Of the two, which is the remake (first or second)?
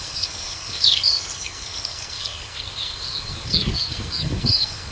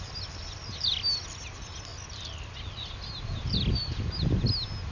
first